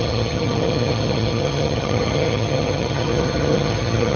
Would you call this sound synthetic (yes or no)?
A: yes